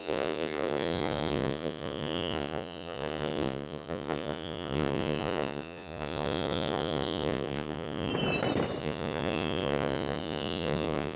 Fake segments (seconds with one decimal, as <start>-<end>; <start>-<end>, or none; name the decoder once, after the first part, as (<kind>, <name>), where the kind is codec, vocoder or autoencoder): 0.0-8.1 (vocoder, Vocos); 8.8-11.2